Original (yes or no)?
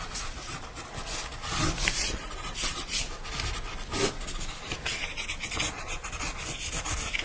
yes